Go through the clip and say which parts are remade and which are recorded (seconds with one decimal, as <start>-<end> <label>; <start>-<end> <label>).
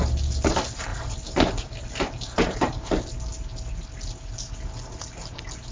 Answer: 0.0-0.9 recorded; 0.9-2.9 remade; 2.9-5.7 recorded